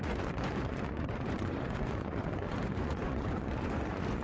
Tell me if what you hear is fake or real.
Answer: fake